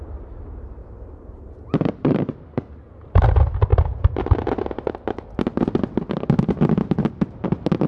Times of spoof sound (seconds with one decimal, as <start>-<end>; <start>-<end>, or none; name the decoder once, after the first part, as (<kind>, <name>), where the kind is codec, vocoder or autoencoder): 0.8-2.8 (vocoder, BigVGAN v2)